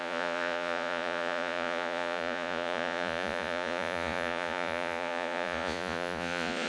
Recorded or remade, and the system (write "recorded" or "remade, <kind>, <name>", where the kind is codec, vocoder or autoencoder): remade, vocoder, Vocos